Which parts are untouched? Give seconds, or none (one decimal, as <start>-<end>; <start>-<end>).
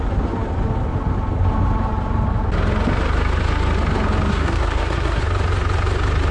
0.0-4.3; 5.2-6.3